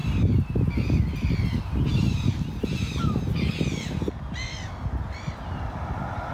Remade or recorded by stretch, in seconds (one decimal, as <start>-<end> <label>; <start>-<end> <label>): 0.0-6.3 recorded